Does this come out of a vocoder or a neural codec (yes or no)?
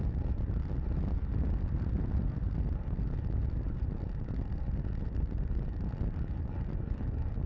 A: no